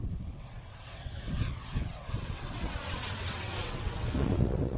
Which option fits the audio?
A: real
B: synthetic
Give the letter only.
B